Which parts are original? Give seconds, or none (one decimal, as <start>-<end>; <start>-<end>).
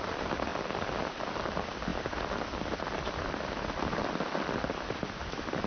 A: 0.0-0.5; 1.1-5.7